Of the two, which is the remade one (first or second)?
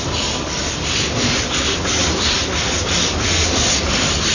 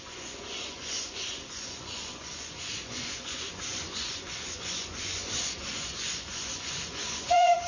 second